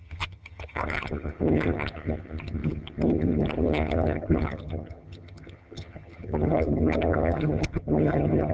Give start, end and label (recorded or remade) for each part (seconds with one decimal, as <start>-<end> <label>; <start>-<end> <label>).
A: 0.0-8.5 remade